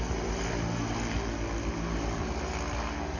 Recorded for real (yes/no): yes